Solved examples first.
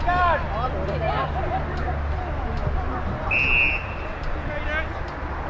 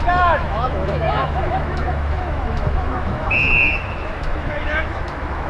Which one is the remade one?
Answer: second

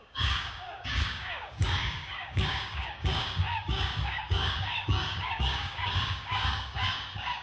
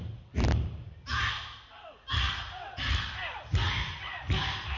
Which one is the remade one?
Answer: first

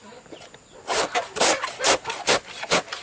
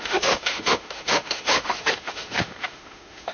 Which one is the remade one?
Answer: second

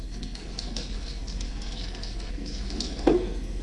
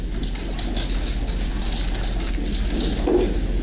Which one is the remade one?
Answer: first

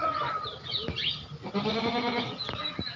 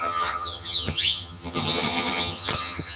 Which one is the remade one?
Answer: second